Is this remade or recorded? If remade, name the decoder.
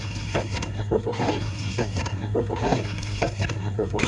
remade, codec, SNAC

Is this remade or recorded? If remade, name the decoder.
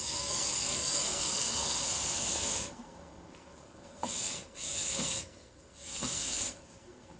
remade, codec, SNAC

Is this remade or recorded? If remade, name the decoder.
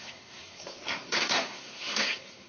remade, codec, SNAC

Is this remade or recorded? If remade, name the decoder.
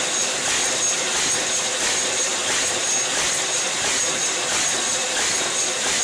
recorded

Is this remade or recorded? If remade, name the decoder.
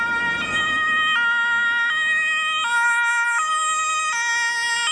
recorded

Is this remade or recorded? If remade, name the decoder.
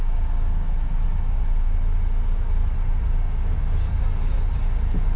recorded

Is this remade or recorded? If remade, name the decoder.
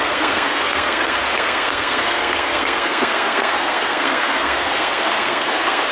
remade, codec, SNAC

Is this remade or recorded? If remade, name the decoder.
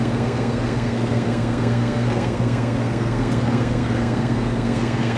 remade, codec, SNAC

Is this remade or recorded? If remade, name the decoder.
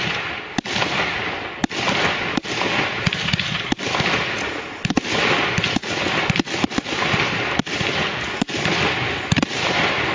recorded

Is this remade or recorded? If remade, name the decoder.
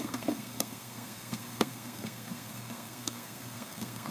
remade, codec, SNAC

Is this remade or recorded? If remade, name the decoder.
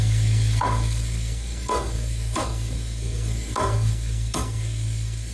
remade, codec, SNAC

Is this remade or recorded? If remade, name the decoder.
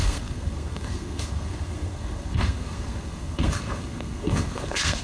remade, codec, SNAC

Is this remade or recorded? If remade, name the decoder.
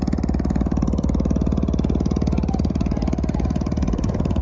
recorded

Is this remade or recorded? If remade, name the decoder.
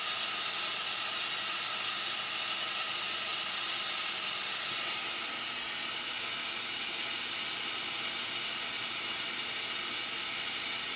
recorded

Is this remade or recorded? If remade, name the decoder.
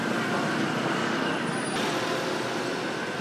recorded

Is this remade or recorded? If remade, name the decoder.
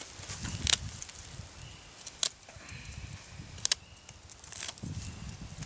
recorded